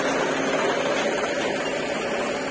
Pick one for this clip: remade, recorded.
recorded